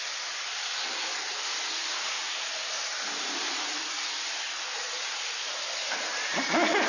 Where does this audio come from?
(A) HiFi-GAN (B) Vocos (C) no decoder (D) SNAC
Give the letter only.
C